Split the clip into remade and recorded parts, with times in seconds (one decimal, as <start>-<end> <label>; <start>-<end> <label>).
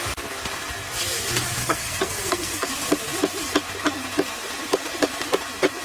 0.0-1.6 recorded; 1.6-2.7 remade; 2.7-5.8 recorded